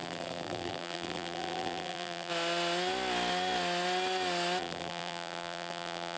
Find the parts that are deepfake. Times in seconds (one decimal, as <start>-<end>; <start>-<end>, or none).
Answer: 0.0-2.3; 4.6-6.2